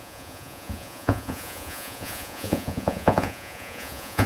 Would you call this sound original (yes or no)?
no